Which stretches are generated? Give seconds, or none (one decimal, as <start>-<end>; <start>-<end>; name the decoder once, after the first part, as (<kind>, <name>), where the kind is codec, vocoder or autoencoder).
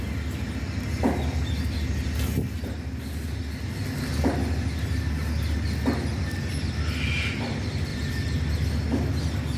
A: 7.9-8.5 (vocoder, BigVGAN v2)